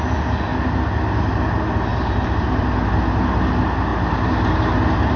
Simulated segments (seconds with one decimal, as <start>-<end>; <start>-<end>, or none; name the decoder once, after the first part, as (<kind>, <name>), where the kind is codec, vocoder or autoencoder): 1.9-2.7 (vocoder, BigVGAN v2)